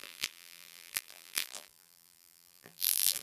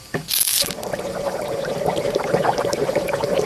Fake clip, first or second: first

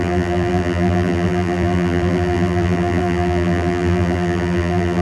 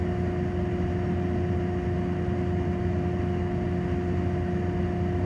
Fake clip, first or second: first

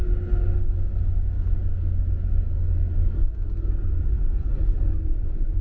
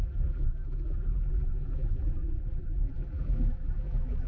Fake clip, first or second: second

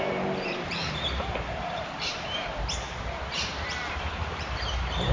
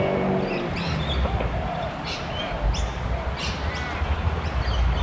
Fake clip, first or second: first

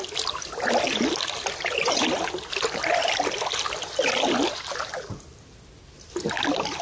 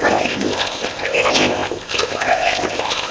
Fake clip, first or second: second